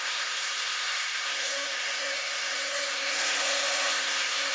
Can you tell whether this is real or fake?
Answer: fake